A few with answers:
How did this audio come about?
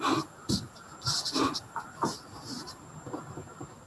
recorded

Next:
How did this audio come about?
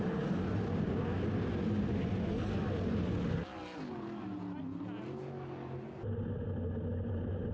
recorded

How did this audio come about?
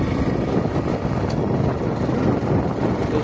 recorded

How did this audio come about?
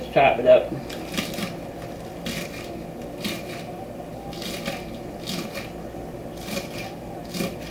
recorded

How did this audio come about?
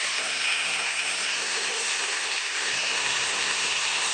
remade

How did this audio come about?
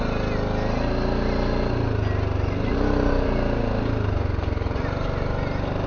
recorded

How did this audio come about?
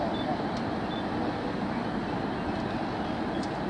recorded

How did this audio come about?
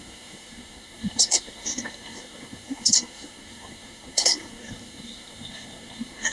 remade